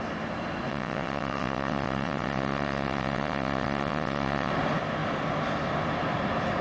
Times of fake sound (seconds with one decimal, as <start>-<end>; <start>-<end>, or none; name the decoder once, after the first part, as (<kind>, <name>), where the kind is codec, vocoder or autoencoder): 0.7-4.5 (vocoder, WaveNeXt)